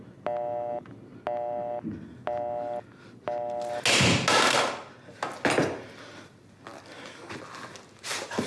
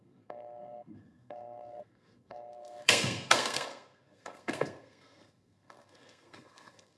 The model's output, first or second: second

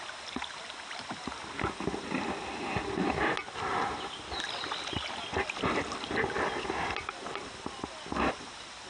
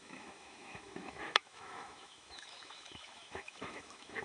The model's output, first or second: second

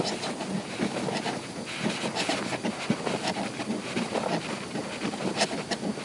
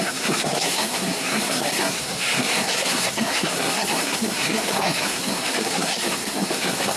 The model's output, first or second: second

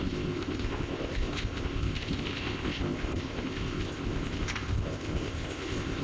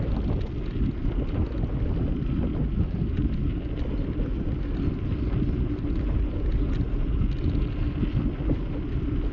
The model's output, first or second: first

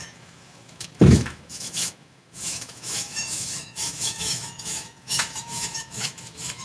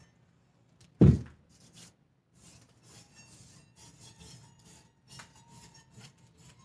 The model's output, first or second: first